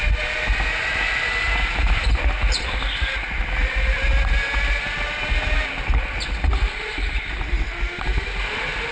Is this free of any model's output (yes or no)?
yes